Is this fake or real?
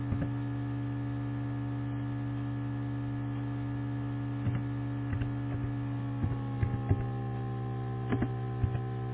real